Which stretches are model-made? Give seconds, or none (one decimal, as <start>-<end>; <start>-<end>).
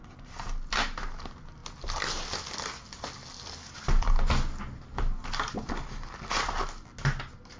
none